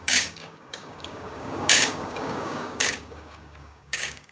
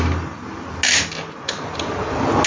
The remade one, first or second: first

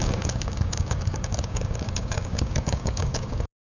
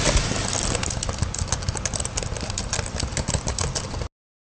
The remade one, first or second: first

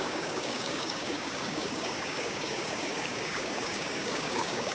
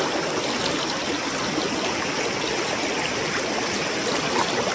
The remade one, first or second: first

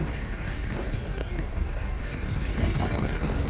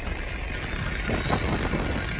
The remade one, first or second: first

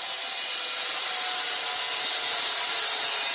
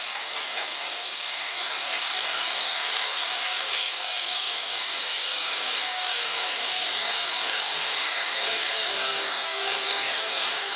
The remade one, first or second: second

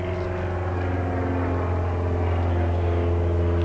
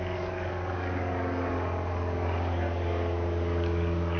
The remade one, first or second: second